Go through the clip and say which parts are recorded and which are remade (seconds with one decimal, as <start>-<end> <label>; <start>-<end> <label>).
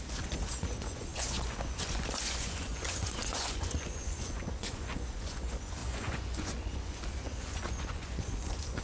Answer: 0.0-8.8 remade